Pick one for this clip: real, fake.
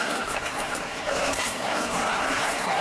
fake